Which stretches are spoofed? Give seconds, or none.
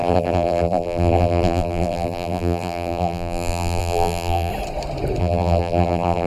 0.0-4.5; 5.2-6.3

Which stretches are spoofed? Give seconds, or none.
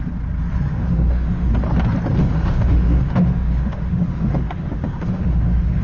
0.7-1.5; 2.2-5.8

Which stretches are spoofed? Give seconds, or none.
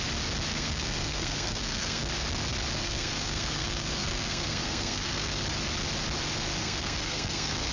0.5-2.1; 2.8-5.4; 6.6-7.7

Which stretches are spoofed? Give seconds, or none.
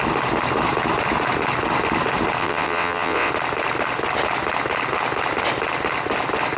2.4-3.3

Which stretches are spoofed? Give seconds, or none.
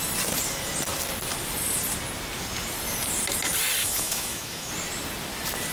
3.8-4.7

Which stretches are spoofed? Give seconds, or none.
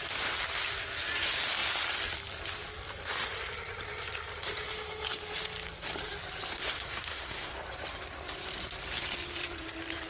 6.5-7.6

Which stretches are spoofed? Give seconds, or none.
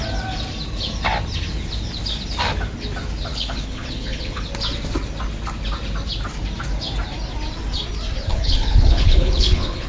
3.3-4.4; 8.3-9.9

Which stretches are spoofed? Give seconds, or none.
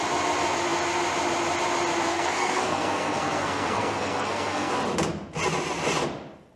2.1-4.7